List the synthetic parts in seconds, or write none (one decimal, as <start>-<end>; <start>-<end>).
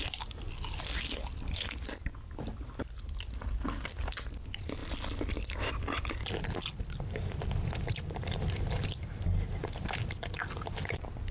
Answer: none